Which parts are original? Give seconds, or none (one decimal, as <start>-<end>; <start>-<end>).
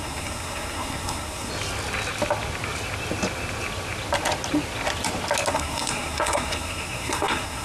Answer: 1.5-5.5